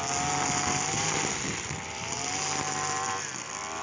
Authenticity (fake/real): real